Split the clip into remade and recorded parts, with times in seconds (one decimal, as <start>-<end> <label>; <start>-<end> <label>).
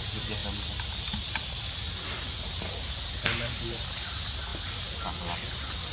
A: 0.0-5.9 recorded